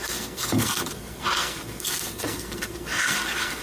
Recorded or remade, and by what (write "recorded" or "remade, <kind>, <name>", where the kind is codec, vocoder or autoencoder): remade, codec, SNAC